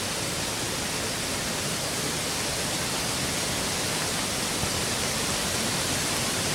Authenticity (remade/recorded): recorded